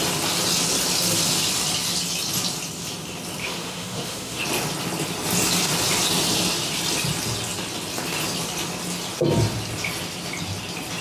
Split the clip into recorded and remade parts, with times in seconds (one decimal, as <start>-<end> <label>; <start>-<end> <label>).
0.0-3.4 recorded; 3.4-4.4 remade; 4.4-11.0 recorded